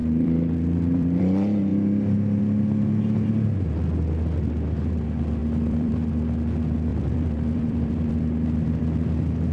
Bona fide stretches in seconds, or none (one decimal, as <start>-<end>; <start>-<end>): 1.2-1.7; 2.4-5.4; 6.1-6.9; 8.8-9.5